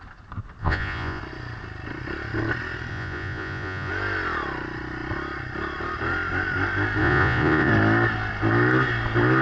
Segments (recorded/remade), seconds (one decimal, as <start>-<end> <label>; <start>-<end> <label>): 0.0-0.6 recorded; 0.6-1.2 remade; 1.2-2.9 recorded; 2.9-3.9 remade; 3.9-7.0 recorded; 7.0-7.7 remade; 7.7-9.4 recorded